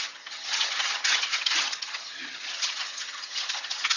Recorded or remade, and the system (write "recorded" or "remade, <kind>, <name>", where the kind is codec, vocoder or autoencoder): remade, vocoder, HiFi-GAN